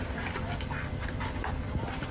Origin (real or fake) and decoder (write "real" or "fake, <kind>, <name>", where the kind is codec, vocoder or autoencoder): real